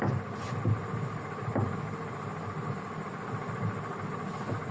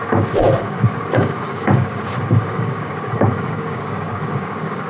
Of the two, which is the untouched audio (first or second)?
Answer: first